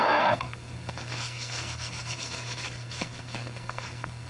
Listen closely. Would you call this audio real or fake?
fake